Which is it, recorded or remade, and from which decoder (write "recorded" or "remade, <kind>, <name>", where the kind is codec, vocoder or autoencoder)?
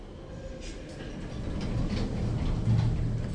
recorded